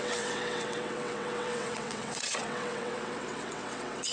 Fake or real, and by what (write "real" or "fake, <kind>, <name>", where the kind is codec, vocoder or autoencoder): fake, vocoder, WaveNeXt